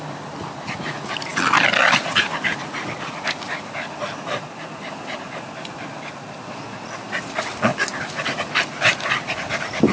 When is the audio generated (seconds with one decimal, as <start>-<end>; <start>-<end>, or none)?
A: none